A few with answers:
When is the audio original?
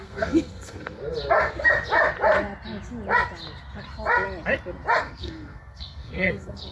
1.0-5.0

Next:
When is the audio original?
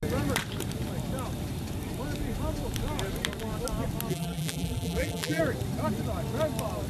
0.0-4.1; 5.4-6.9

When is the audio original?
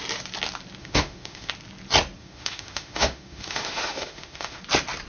0.0-0.8; 1.5-2.2; 4.6-5.1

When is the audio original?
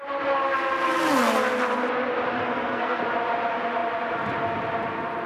0.0-2.4; 3.0-5.3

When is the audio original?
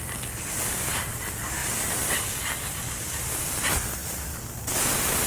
0.0-5.3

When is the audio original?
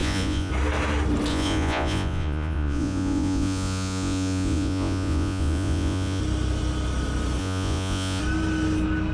0.5-1.3; 6.2-7.4; 8.2-9.1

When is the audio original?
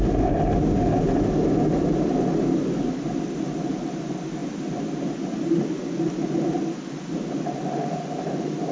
0.0-8.7